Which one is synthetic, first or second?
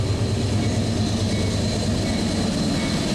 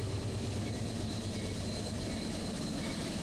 second